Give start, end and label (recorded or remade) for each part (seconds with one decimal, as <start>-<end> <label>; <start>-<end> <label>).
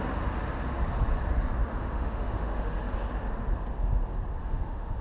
0.0-1.7 recorded; 1.7-2.8 remade; 2.8-4.4 recorded; 4.4-5.0 remade